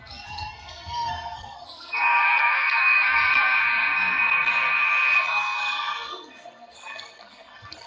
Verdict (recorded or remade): remade